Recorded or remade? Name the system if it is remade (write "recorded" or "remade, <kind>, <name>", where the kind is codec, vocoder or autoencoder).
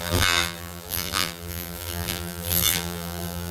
remade, vocoder, BigVGAN v2